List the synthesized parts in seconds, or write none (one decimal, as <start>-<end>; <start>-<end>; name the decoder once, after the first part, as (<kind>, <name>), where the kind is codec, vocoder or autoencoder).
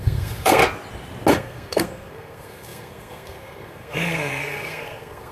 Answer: 0.0-0.6 (codec, SNAC); 1.3-5.3